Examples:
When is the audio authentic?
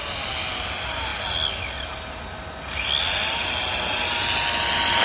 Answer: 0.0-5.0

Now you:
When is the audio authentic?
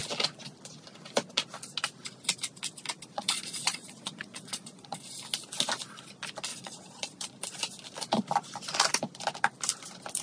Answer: 0.0-3.1; 5.0-6.5; 7.3-10.2